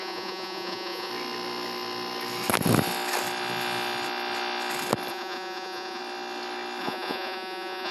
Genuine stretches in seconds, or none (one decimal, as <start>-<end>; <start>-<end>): 1.1-5.1; 6.0-6.8